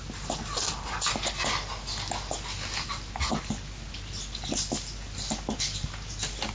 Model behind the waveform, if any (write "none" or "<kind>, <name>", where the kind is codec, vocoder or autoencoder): none